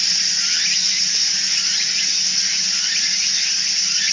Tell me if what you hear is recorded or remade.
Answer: recorded